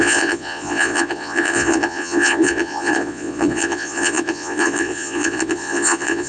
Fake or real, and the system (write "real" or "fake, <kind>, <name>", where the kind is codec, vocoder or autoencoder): fake, vocoder, Vocos